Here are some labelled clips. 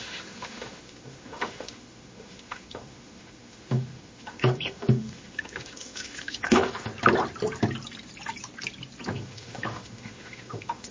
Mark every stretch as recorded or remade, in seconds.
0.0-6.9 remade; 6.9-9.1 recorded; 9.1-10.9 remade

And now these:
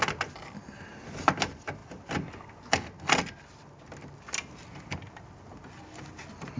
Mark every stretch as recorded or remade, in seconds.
0.0-6.6 recorded

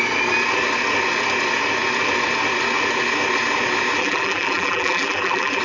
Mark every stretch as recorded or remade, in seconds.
0.0-4.0 recorded; 4.0-5.6 remade